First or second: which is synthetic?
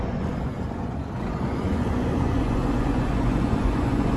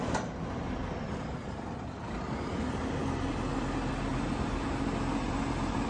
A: first